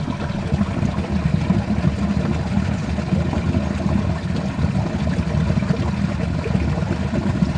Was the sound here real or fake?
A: real